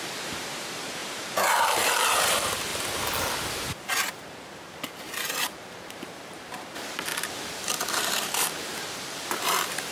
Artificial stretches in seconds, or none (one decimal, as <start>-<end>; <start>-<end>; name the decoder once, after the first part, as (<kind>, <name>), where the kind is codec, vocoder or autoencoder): 0.0-2.7 (vocoder, BigVGAN v2); 3.9-7.1; 7.9-9.9

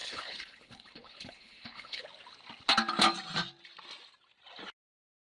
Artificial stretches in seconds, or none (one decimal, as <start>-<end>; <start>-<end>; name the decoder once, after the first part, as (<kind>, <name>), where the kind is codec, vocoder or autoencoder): 0.0-2.0 (codec, HILCodec)

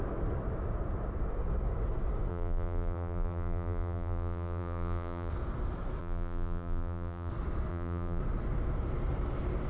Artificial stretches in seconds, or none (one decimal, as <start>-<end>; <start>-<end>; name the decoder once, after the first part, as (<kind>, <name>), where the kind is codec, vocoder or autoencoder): 2.3-5.3 (vocoder, BigVGAN v2); 6.0-7.3; 7.7-8.2

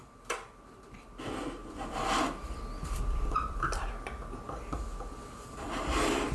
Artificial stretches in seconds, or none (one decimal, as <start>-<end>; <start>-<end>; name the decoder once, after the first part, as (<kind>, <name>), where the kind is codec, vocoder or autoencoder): 1.6-3.9 (vocoder, BigVGAN v2); 5.3-6.3

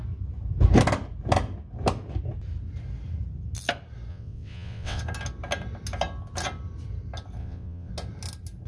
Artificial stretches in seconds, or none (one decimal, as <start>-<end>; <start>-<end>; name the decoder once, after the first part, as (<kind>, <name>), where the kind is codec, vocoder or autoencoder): 4.1-5.0 (vocoder, WaveNeXt); 7.4-7.9

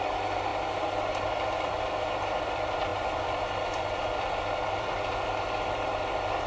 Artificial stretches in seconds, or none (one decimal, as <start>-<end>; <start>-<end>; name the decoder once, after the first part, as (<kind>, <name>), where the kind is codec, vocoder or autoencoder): 0.0-6.5 (vocoder, BigVGAN v2)

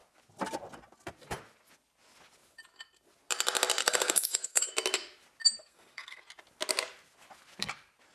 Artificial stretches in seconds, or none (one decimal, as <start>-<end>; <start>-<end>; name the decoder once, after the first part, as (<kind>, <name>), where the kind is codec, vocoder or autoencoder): 3.8-4.7 (codec, SNAC); 5.6-6.2

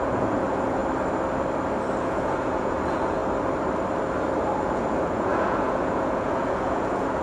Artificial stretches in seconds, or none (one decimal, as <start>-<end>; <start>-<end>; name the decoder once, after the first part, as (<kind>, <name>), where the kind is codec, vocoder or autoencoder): 0.0-0.8 (vocoder, Vocos); 2.0-3.2; 4.6-7.2